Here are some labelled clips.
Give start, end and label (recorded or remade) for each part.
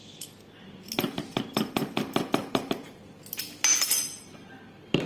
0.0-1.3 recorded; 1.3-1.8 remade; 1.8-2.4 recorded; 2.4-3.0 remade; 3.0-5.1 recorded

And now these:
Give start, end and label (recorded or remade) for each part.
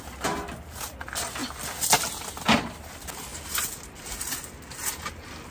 0.0-5.5 recorded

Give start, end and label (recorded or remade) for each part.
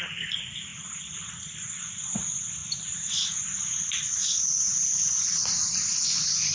0.0-0.7 remade; 0.7-1.3 recorded; 1.3-2.6 remade; 2.6-4.7 recorded; 4.7-6.5 remade